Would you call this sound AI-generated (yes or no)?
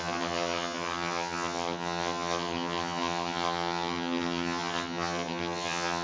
yes